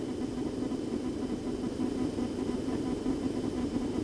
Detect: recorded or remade recorded